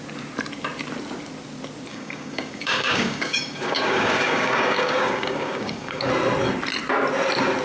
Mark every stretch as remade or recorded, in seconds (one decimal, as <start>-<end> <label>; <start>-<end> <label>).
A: 0.0-1.9 recorded; 1.9-6.1 remade; 6.1-7.6 recorded